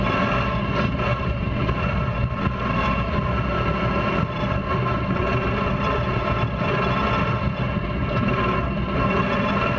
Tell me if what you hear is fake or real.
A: real